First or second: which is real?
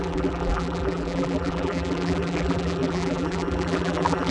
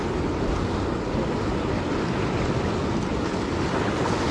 second